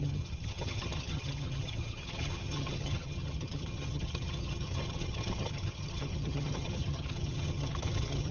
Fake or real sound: fake